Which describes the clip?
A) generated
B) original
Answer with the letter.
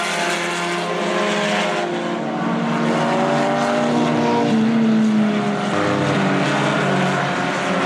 B